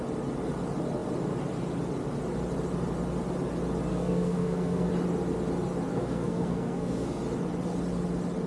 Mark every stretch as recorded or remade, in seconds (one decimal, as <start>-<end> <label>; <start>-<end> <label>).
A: 0.0-3.9 recorded; 3.9-4.9 remade; 4.9-5.9 recorded; 5.9-7.2 remade; 7.2-8.5 recorded